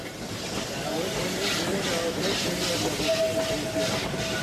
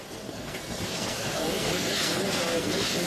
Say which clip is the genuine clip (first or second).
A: first